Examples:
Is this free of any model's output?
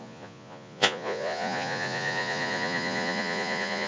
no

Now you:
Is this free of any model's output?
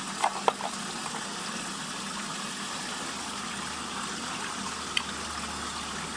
yes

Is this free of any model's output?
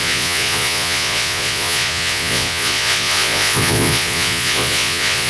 no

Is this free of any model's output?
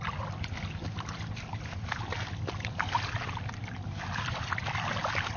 yes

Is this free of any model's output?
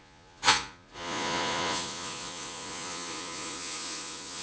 no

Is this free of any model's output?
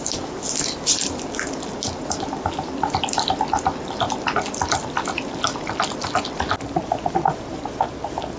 yes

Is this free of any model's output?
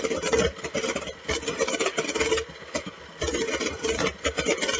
yes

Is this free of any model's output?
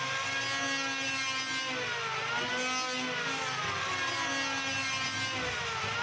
yes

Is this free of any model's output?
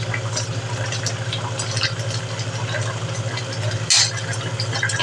yes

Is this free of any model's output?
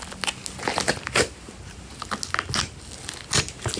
yes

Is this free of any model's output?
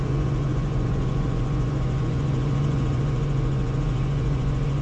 no